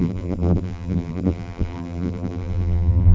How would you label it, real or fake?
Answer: fake